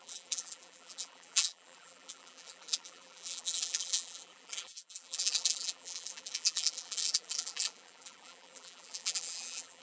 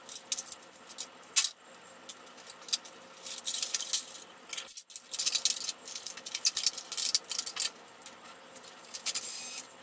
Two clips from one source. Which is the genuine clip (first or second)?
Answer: second